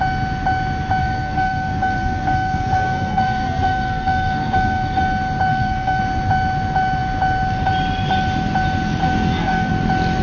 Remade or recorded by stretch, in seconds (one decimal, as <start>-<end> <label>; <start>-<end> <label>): 0.0-1.0 recorded; 1.0-5.0 remade; 5.0-5.5 recorded; 5.5-6.0 remade; 6.0-9.0 recorded; 9.0-9.7 remade; 9.7-10.2 recorded